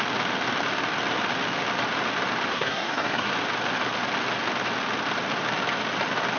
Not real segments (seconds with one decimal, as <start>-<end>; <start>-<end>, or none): 2.5-3.3